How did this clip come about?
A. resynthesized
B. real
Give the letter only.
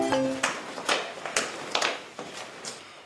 B